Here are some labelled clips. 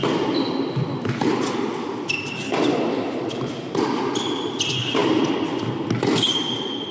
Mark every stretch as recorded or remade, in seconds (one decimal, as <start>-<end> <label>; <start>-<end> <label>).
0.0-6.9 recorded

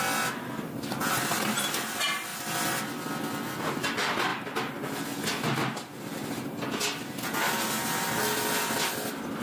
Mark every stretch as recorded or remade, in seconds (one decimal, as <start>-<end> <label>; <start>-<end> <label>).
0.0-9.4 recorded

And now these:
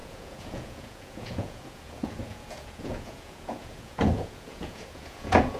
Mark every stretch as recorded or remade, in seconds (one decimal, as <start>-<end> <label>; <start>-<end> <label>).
0.0-5.6 remade

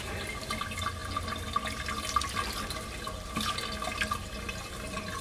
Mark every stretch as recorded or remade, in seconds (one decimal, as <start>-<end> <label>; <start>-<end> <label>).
0.0-5.2 recorded